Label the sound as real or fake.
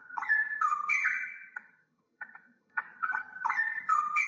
fake